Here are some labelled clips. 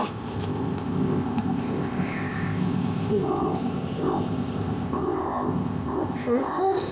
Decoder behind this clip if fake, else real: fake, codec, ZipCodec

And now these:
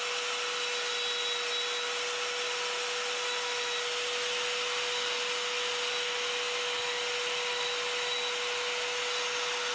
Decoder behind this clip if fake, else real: real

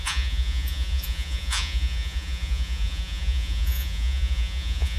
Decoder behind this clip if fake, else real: fake, vocoder, Vocos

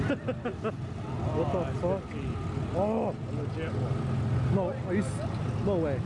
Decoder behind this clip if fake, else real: real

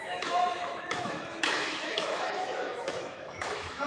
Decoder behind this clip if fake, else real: fake, autoencoder, DAC-VAE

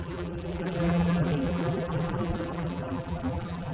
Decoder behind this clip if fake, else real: fake, vocoder, BigVGAN v2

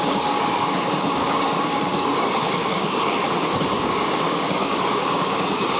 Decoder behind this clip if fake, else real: fake, codec, DAC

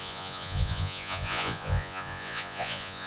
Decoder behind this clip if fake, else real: fake, vocoder, Vocos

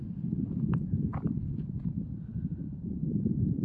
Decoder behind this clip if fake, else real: real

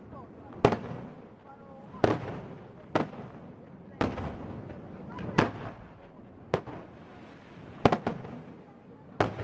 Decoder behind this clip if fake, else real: real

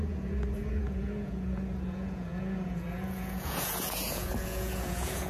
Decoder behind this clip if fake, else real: fake, vocoder, Vocos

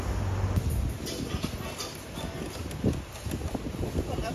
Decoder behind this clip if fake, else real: real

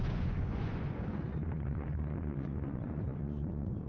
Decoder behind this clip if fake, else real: fake, vocoder, Vocos